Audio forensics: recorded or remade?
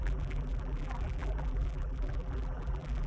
remade